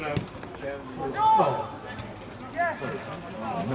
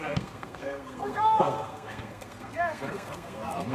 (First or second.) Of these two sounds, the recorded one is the first